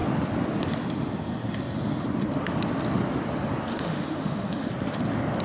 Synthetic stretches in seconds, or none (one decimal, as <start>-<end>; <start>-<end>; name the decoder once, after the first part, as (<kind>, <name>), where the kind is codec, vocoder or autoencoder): 3.7-4.7 (autoencoder, DAC-VAE)